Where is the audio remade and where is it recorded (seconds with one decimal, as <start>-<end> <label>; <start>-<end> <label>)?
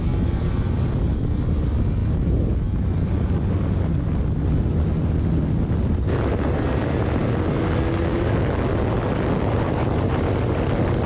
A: 0.0-11.1 recorded